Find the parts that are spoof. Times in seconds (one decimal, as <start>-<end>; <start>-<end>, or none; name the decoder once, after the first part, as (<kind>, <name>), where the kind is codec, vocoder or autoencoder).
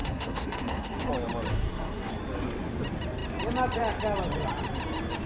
0.0-1.1 (codec, SNAC); 1.5-2.1